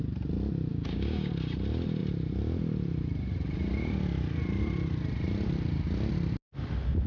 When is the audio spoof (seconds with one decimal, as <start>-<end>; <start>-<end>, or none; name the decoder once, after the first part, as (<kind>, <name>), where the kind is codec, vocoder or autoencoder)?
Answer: 0.7-1.3 (codec, DAC)